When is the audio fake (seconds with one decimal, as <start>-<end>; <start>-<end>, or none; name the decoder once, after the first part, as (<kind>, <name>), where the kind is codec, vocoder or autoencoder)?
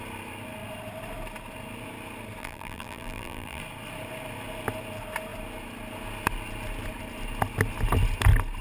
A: 2.4-3.6 (vocoder, BigVGAN v2)